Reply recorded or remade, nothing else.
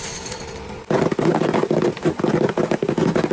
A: recorded